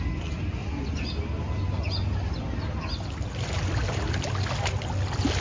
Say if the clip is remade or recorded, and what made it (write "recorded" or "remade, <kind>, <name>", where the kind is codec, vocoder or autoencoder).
recorded